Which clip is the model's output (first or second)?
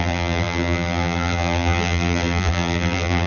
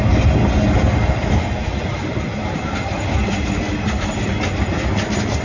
first